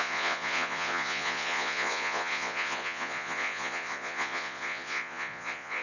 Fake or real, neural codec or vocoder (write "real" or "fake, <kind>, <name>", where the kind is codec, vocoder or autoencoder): fake, vocoder, Vocos